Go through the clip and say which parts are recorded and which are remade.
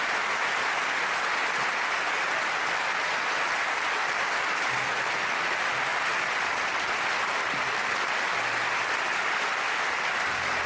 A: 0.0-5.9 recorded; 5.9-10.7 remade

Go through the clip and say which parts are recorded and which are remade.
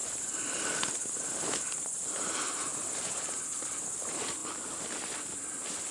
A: 0.0-2.7 remade; 2.7-3.6 recorded; 3.6-4.4 remade; 4.4-5.9 recorded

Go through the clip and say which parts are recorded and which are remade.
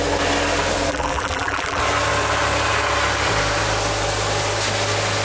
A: 0.0-0.9 recorded; 0.9-1.8 remade; 1.8-5.2 recorded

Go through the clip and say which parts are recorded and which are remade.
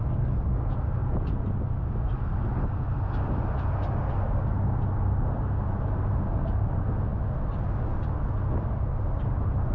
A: 0.0-9.7 recorded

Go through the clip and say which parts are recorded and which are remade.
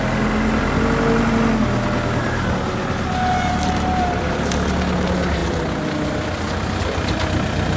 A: 0.0-7.8 recorded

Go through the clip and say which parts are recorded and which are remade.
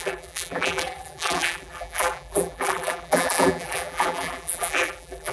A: 0.0-5.3 remade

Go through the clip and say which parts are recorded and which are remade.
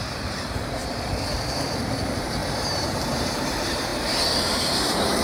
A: 0.0-0.8 remade; 0.8-1.5 recorded; 1.5-5.2 remade